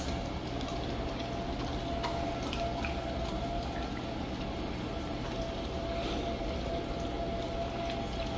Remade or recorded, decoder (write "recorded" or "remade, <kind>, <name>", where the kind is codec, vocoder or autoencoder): recorded